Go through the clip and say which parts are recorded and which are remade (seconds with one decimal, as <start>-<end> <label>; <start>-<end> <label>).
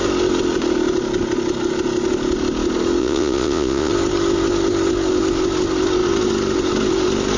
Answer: 0.0-3.0 recorded; 3.0-3.9 remade; 3.9-7.4 recorded